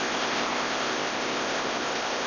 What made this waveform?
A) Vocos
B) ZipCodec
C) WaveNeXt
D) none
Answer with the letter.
B